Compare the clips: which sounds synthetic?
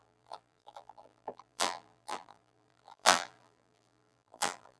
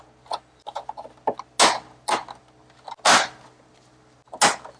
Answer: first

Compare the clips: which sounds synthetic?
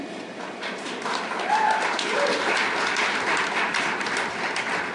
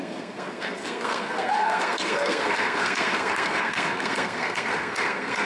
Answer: second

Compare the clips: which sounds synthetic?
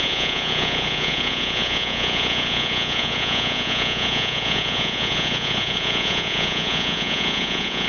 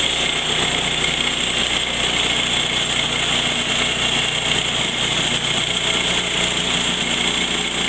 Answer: first